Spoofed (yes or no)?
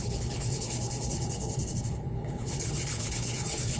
yes